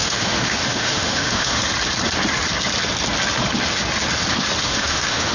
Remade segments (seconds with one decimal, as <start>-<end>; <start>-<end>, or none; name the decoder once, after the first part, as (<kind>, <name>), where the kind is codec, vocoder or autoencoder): 0.0-1.6 (autoencoder, DAC-VAE); 4.6-5.3